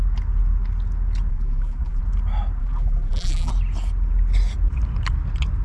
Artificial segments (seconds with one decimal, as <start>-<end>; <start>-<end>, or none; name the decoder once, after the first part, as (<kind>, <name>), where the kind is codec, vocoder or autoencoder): 1.3-2.0 (vocoder, BigVGAN v2); 2.6-3.5

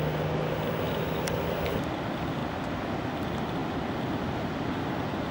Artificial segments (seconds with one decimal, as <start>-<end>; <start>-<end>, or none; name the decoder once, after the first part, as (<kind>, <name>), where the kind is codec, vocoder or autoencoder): none

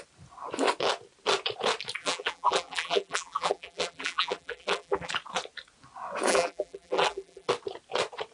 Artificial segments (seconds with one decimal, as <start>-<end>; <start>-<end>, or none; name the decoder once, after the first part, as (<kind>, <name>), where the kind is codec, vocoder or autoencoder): 2.0-5.1 (vocoder, BigVGAN v2); 6.3-7.5

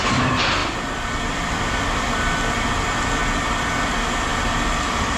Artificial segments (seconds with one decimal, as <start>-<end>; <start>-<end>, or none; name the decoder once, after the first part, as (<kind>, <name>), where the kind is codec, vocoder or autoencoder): 0.6-2.1 (vocoder, BigVGAN v2); 4.3-5.2

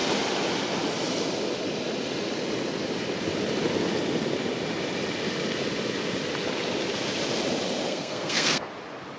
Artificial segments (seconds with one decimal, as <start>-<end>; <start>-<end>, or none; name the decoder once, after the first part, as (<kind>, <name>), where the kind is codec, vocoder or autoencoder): 7.9-8.7 (codec, SNAC)

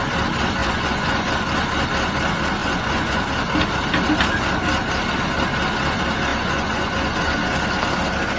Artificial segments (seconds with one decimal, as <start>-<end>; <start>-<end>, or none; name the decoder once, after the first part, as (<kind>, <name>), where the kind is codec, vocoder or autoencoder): 0.6-1.3 (vocoder, Vocos); 2.6-3.2; 6.3-7.6

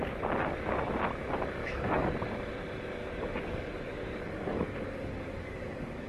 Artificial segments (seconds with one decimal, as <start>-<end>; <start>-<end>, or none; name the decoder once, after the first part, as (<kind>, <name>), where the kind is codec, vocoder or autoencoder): 1.6-2.1 (codec, DAC); 3.0-6.1

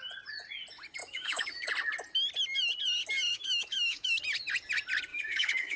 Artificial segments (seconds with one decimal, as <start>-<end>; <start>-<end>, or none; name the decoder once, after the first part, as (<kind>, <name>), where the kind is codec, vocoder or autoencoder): 1.0-1.7 (autoencoder, DAC-VAE); 3.3-4.2; 5.1-5.8